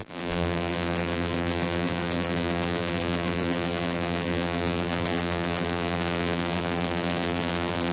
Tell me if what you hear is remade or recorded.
remade